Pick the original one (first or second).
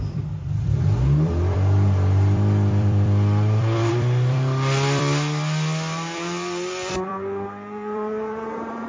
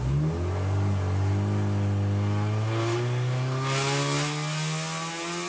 second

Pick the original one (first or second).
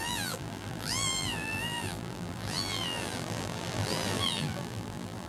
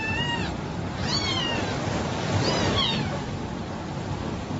second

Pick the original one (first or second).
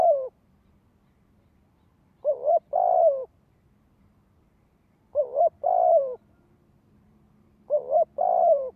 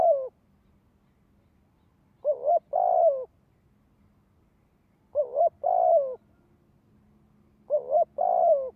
second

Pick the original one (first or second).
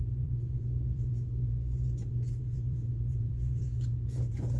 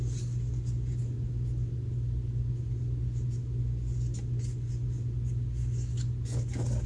second